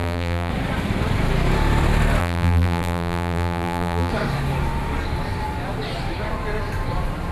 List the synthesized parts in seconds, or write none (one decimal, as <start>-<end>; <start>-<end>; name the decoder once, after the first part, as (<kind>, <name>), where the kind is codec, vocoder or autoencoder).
0.0-0.5 (vocoder, BigVGAN v2); 2.2-4.1